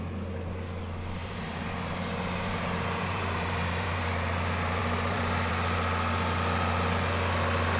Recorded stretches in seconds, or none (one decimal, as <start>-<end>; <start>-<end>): 0.0-1.2; 4.1-4.8; 5.5-7.8